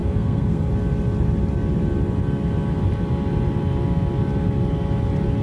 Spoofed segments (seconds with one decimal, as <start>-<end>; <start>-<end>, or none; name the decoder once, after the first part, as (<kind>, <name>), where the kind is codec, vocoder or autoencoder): 0.0-0.7 (codec, SNAC)